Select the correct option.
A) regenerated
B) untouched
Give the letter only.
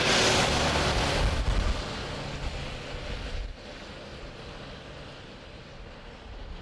B